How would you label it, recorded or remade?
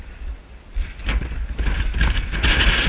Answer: recorded